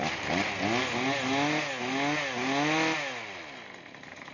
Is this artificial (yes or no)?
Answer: no